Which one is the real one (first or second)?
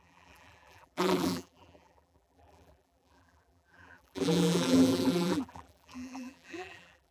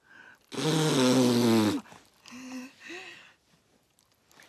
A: second